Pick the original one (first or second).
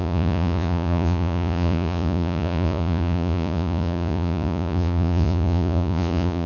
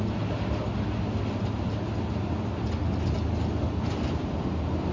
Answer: second